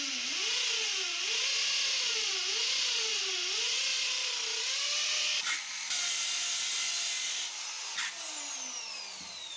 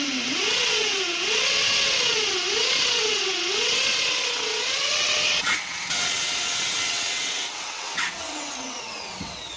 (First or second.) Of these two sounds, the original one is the first